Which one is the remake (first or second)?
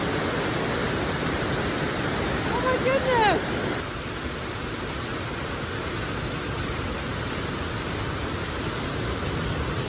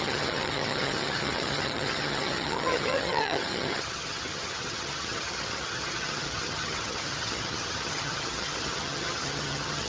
second